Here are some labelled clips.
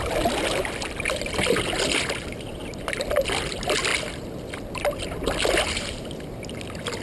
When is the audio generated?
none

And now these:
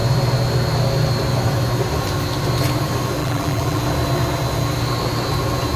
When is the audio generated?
3.2-3.8 (vocoder, BigVGAN v2)

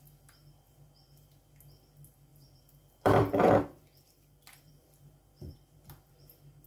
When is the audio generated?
2.3-6.3 (vocoder, BigVGAN v2)

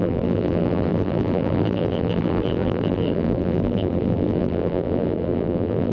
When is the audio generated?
0.0-5.9 (vocoder, BigVGAN v2)